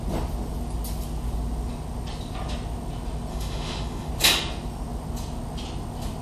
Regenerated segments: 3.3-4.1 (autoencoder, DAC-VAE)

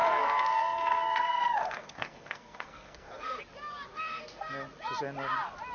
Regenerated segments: 0.0-3.4 (codec, SNAC); 3.9-4.5

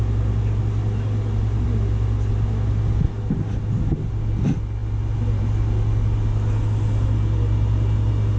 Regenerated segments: none

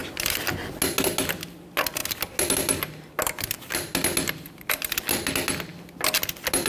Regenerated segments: none